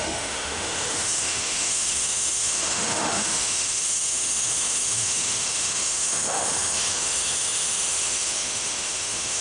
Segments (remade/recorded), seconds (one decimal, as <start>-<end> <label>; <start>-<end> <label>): 0.0-9.4 remade